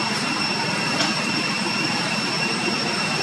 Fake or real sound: fake